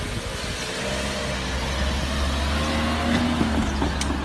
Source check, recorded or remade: recorded